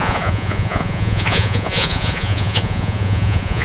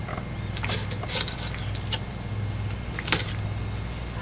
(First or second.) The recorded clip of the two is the second